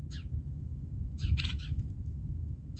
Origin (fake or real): fake